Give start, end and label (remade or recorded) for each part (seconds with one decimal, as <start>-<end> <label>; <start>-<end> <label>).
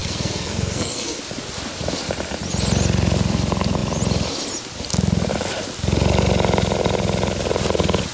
0.0-1.2 remade; 1.2-8.1 recorded